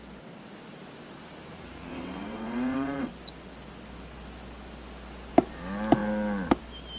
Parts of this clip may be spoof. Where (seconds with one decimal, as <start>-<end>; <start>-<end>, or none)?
1.9-3.1